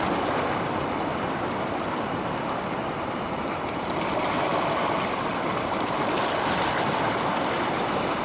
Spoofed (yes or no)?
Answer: no